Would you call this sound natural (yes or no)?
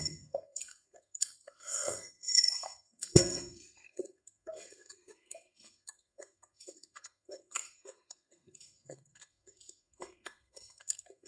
no